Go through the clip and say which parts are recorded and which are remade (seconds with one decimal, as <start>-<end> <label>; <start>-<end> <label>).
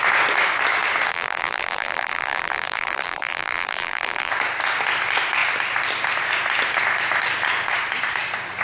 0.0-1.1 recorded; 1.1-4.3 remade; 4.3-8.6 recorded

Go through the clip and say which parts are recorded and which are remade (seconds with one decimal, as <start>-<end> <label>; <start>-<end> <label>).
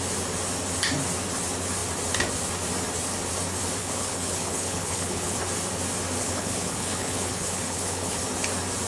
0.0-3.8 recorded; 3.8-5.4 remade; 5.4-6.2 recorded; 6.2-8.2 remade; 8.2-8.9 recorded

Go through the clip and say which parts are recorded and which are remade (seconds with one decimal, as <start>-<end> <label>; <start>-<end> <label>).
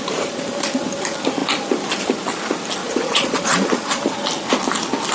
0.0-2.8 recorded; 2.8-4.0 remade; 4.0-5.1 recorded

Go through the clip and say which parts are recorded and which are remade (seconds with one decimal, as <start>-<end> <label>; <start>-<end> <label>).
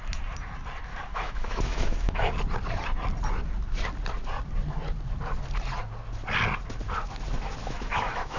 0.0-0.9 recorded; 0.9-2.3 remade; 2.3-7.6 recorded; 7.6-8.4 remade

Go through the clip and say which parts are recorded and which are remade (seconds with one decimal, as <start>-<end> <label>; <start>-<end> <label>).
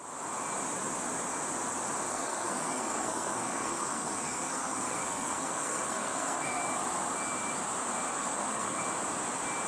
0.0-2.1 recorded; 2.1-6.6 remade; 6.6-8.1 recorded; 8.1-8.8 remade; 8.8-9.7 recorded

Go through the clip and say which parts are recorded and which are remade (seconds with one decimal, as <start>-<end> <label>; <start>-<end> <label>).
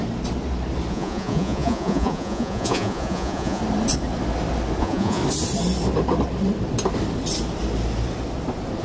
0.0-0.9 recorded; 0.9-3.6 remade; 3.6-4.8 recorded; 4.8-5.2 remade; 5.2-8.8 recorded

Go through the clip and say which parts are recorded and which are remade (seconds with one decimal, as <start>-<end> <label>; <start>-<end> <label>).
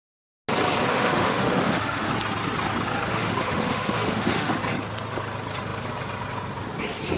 0.0-0.9 recorded; 0.9-2.1 remade; 2.1-3.1 recorded; 3.1-4.6 remade; 4.6-7.2 recorded